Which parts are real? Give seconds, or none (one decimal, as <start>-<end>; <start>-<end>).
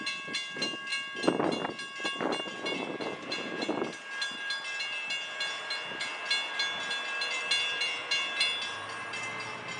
0.0-9.8